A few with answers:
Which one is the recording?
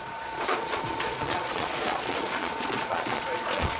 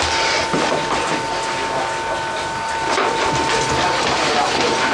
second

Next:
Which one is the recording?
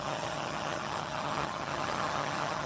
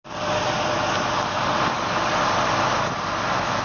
second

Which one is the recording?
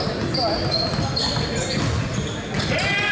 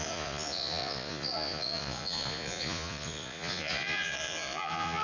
first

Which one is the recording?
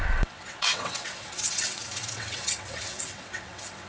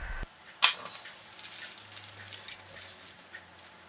second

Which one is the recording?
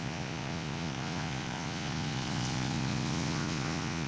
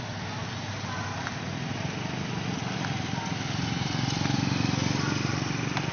second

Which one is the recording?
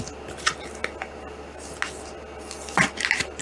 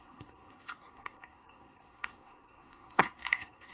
first